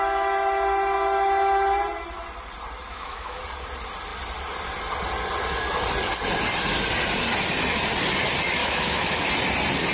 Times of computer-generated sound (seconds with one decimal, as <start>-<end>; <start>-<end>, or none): 2.9-3.4; 8.6-9.2